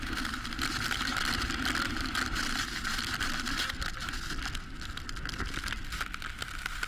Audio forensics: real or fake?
real